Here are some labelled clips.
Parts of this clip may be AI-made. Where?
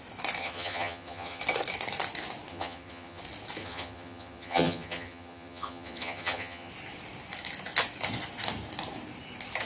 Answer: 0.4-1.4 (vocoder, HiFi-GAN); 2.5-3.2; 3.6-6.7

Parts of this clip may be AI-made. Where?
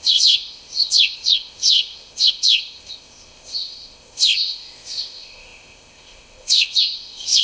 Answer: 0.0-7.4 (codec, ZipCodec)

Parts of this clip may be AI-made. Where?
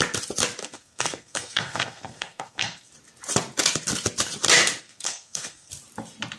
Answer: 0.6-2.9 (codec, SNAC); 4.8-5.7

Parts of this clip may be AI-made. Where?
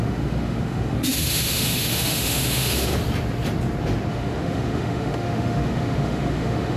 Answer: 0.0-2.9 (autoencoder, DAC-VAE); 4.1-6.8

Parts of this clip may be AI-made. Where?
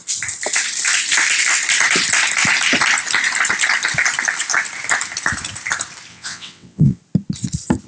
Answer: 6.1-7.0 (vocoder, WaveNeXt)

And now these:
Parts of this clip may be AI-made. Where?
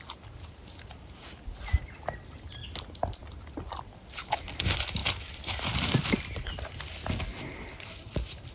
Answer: none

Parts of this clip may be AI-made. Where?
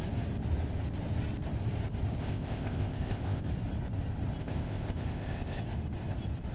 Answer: 2.2-3.4 (codec, ZipCodec); 4.4-5.6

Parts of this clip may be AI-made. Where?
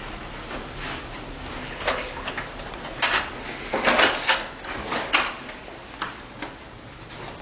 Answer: 1.6-2.3 (codec, HILCodec)